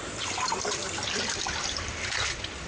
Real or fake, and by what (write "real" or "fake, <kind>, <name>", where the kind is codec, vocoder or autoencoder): fake, vocoder, BigVGAN v2